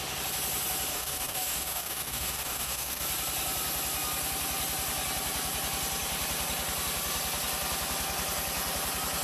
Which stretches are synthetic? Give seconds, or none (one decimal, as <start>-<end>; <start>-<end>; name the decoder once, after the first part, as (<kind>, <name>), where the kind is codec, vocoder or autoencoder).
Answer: 0.9-3.0 (codec, DAC)